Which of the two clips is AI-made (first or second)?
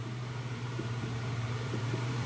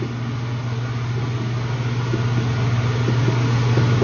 first